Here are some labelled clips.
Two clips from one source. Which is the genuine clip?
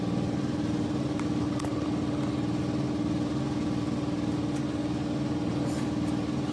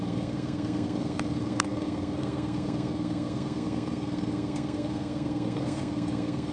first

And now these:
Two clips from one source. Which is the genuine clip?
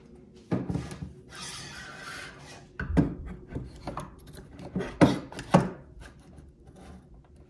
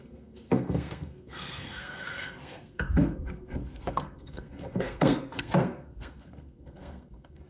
first